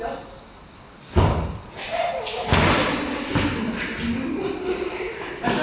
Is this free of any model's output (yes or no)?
yes